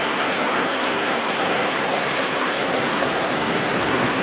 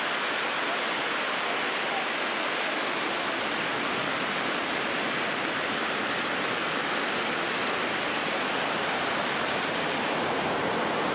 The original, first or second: second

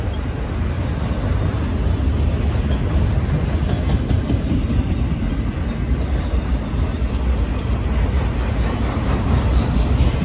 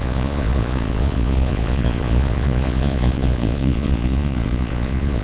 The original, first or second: first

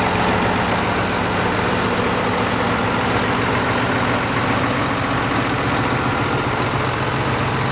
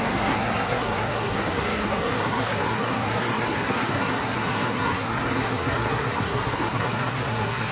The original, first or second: first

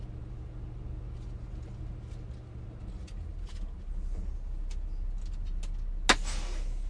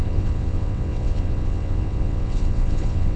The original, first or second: first